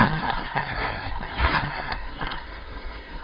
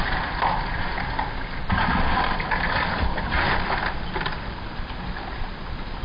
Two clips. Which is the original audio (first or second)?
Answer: second